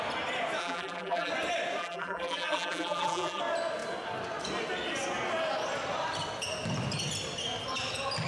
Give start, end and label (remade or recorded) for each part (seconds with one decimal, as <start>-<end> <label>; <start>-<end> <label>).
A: 0.0-0.6 recorded; 0.6-1.3 remade; 1.3-1.8 recorded; 1.8-3.4 remade; 3.4-8.3 recorded

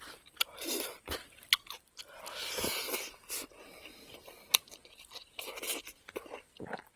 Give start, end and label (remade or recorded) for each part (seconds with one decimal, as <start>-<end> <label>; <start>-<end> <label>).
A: 0.0-2.0 recorded; 2.0-2.5 remade; 2.5-5.2 recorded; 5.2-5.8 remade; 5.8-7.0 recorded

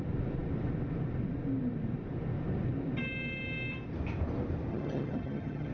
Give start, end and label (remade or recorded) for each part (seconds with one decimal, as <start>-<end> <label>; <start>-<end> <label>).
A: 0.0-4.7 recorded; 4.7-5.7 remade

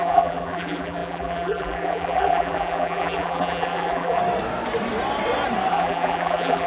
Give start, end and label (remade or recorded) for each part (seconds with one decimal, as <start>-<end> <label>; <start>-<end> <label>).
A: 0.0-4.2 remade; 4.2-5.7 recorded; 5.7-6.7 remade